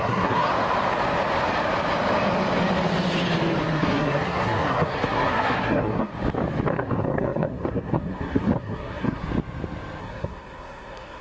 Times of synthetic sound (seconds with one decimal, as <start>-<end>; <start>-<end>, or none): 0.0-0.5; 3.6-6.1; 6.7-9.2; 10.0-11.2